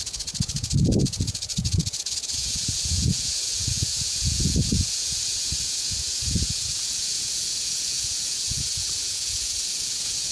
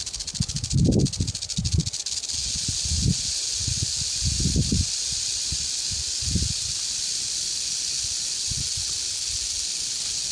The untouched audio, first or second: second